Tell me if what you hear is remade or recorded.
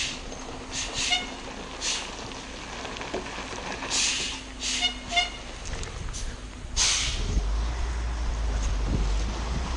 recorded